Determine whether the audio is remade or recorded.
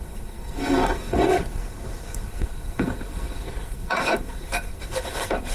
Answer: remade